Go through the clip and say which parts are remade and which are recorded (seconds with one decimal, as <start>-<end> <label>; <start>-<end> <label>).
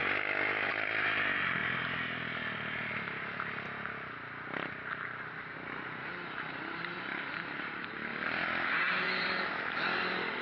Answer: 0.0-0.7 recorded; 0.7-1.6 remade; 1.6-6.7 recorded; 6.7-8.1 remade; 8.1-8.8 recorded; 8.8-10.4 remade